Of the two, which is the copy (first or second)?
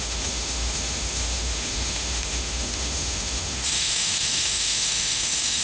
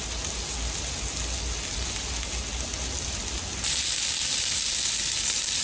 first